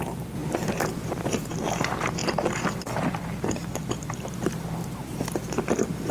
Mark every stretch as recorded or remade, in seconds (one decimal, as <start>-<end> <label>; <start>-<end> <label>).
0.0-6.1 remade